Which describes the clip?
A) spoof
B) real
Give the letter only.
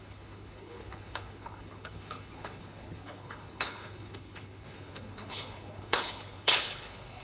A